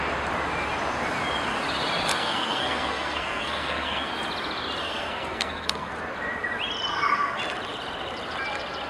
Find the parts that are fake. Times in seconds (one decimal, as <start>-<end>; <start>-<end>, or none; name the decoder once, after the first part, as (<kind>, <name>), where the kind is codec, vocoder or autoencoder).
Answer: 2.1-4.1 (codec, SNAC); 4.8-5.9; 6.9-7.4